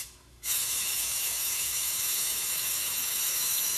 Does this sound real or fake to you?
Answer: fake